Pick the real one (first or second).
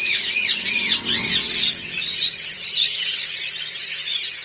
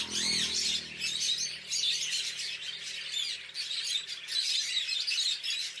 second